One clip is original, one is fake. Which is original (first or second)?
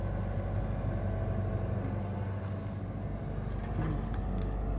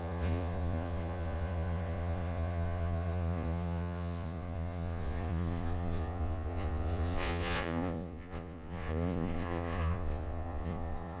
first